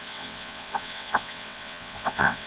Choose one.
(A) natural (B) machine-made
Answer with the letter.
B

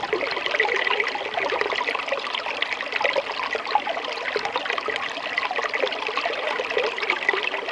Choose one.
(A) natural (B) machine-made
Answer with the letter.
A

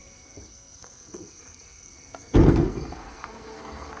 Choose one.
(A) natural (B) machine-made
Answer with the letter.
B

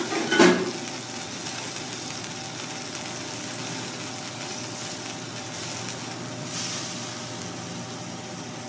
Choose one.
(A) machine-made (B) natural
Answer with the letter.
B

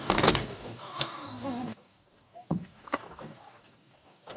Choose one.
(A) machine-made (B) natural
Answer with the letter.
A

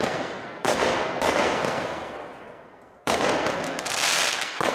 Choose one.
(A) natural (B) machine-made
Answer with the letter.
B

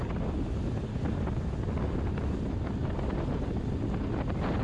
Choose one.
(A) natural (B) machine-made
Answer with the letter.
A